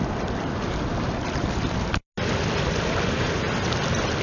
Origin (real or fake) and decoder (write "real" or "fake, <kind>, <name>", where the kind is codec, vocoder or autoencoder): real